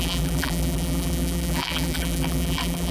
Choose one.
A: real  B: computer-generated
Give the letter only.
B